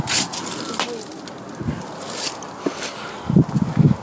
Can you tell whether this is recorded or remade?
recorded